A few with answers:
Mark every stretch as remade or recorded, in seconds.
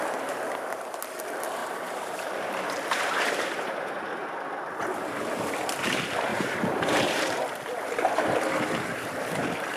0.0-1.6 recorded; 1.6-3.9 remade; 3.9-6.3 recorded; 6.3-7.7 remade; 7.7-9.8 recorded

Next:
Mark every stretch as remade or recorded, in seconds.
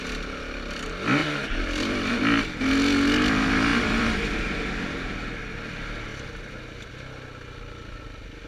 0.0-1.2 recorded; 1.2-2.1 remade; 2.1-3.7 recorded; 3.7-4.6 remade; 4.6-8.5 recorded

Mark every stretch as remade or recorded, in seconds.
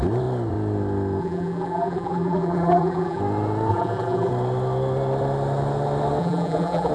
0.0-1.2 recorded; 1.2-3.2 remade; 3.2-3.7 recorded; 3.7-4.3 remade; 4.3-6.2 recorded; 6.2-6.9 remade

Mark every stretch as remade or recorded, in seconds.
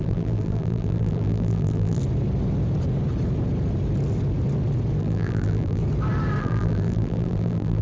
0.0-2.0 remade; 2.0-5.0 recorded; 5.0-5.8 remade; 5.8-6.4 recorded; 6.4-7.8 remade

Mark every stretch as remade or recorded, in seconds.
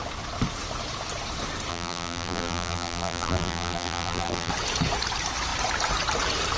0.0-1.7 recorded; 1.7-4.5 remade; 4.5-6.6 recorded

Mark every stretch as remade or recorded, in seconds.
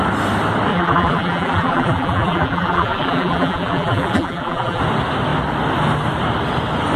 0.0-0.7 recorded; 0.7-4.8 remade; 4.8-7.0 recorded